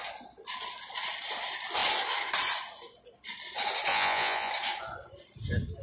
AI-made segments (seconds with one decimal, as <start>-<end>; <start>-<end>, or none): 3.9-4.5